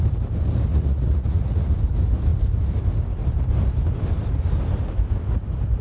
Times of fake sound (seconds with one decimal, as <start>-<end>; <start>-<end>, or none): 0.7-1.7

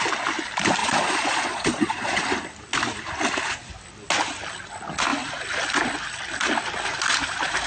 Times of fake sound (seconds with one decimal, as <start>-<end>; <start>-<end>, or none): 0.8-2.2